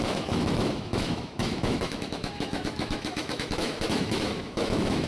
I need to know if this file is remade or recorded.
remade